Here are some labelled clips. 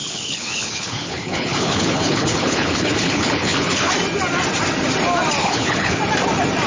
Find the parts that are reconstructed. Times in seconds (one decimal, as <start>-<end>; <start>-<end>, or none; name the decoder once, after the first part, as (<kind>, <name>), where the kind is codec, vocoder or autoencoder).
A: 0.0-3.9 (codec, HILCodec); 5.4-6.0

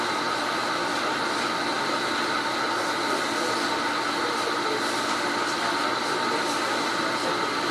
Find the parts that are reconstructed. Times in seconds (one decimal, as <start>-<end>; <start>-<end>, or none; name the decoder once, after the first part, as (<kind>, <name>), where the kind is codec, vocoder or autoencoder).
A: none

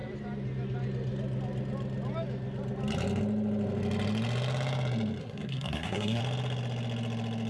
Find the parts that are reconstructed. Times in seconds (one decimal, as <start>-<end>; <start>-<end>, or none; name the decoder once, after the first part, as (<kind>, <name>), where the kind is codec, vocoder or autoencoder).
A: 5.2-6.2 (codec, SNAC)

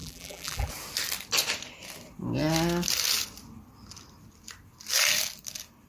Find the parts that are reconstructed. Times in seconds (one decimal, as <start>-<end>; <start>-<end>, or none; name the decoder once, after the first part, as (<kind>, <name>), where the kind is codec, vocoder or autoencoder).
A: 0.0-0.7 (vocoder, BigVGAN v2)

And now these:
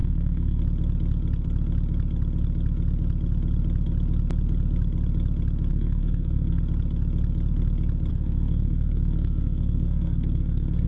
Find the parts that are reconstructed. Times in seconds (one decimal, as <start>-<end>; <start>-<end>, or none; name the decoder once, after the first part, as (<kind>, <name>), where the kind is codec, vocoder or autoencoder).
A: 0.0-0.6 (codec, SNAC); 5.7-6.6; 8.1-10.9

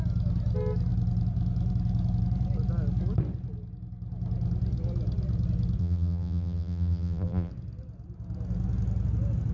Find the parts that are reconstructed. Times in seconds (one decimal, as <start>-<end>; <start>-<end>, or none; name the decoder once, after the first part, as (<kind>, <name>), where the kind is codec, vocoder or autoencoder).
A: 5.8-7.5 (vocoder, BigVGAN v2)

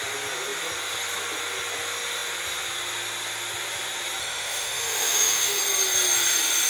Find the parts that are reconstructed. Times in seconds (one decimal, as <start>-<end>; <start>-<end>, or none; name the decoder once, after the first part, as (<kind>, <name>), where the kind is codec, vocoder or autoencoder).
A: 4.2-5.6 (autoencoder, DAC-VAE)